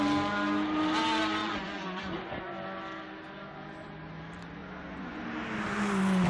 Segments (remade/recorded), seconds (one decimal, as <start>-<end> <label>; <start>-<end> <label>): 0.0-1.4 recorded; 1.4-2.4 remade; 2.4-4.6 recorded; 4.6-5.2 remade; 5.2-6.3 recorded